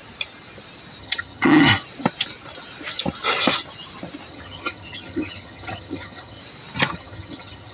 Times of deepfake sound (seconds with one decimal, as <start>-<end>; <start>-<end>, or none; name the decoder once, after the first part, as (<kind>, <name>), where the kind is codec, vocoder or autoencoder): 1.0-1.7 (vocoder, HiFi-GAN); 4.3-6.4; 6.9-7.7